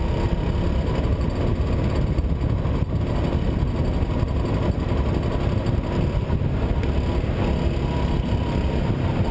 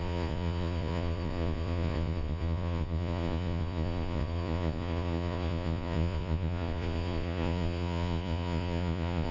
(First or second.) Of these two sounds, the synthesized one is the second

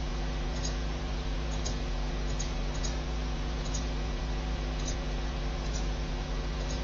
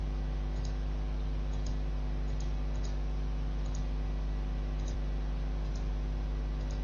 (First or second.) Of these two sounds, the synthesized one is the first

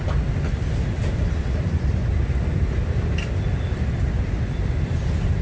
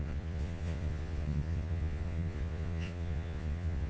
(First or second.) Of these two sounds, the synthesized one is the second